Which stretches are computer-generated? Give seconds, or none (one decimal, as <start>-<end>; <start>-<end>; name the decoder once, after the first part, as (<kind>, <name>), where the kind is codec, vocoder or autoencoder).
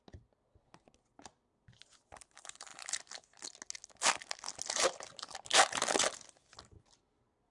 none